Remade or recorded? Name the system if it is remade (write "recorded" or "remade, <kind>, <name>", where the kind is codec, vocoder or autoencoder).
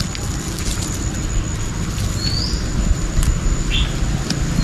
recorded